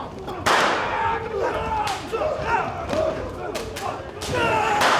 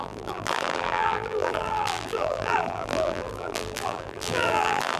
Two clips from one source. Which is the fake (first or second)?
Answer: second